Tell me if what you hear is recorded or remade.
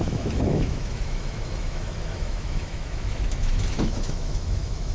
remade